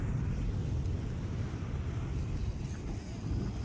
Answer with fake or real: real